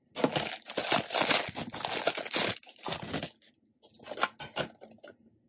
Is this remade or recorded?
recorded